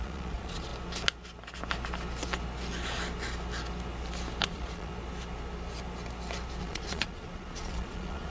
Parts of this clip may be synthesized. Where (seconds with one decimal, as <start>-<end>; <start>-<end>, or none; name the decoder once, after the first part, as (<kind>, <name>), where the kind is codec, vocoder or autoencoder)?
0.0-0.7 (vocoder, Vocos); 4.4-4.9; 6.6-8.3